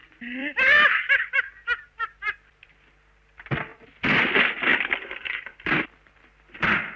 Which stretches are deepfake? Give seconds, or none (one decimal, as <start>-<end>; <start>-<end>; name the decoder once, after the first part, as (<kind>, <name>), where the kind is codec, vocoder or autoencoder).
0.0-2.9 (vocoder, BigVGAN v2); 3.7-4.3; 4.7-5.7